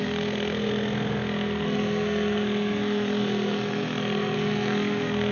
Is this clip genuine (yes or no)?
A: no